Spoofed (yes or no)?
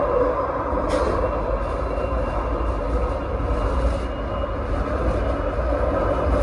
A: no